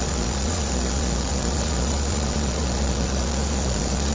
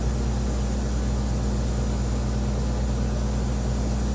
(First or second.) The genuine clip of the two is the second